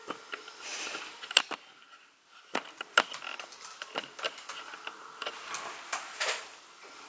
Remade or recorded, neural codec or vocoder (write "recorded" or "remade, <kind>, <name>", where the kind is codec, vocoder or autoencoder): recorded